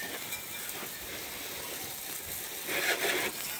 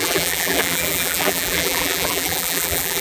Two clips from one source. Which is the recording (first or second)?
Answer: first